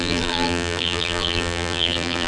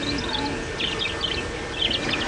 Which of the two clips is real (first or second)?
second